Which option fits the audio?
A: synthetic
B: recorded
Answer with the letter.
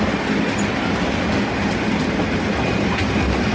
B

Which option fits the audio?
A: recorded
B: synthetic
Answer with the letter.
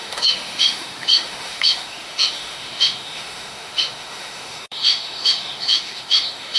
B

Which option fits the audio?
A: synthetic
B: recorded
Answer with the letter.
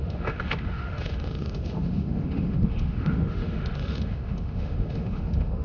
A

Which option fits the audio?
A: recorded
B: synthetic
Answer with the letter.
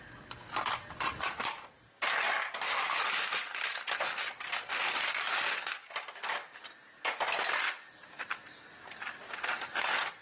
A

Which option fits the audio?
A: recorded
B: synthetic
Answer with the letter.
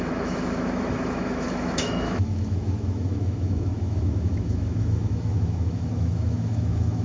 B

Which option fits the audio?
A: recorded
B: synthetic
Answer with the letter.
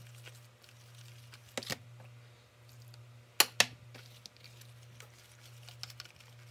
A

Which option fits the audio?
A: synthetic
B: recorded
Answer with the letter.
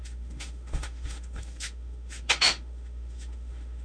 A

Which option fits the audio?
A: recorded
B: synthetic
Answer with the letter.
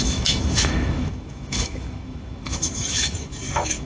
B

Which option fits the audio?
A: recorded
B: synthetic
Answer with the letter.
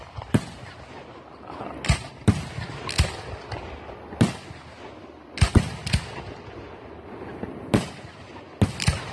A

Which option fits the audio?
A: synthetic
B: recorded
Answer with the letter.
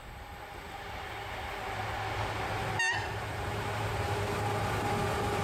B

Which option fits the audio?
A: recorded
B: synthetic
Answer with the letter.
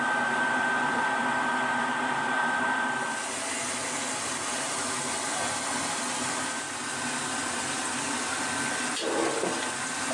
A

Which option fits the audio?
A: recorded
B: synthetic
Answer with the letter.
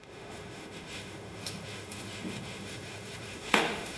B